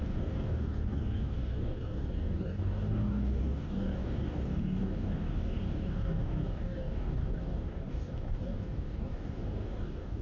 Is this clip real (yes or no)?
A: no